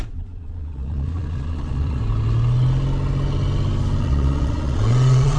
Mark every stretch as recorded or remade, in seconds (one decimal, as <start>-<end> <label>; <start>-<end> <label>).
0.0-2.0 remade; 2.0-4.0 recorded; 4.0-5.4 remade